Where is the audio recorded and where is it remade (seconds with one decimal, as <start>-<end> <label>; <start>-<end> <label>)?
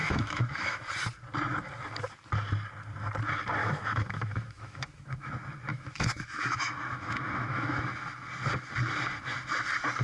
0.0-0.9 remade; 0.9-3.6 recorded; 3.6-5.3 remade; 5.3-5.7 recorded; 5.7-7.9 remade; 7.9-10.0 recorded